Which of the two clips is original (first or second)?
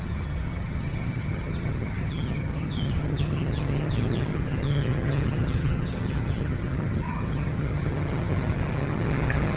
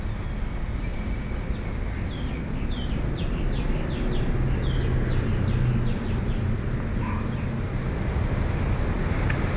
second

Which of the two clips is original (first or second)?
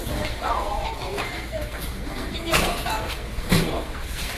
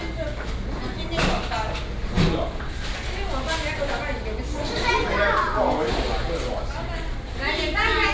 second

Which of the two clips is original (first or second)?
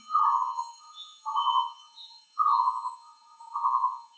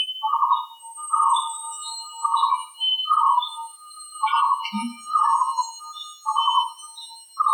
second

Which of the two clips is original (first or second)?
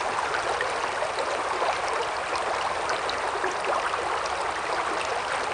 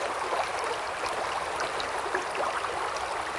first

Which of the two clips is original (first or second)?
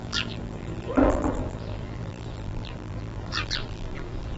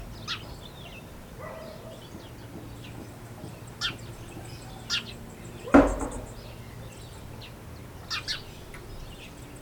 second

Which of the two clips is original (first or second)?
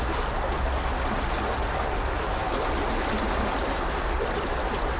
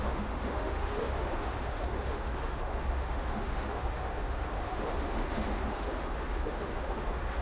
first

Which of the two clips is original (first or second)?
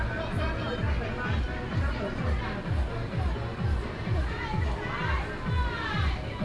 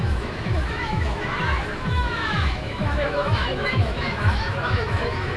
first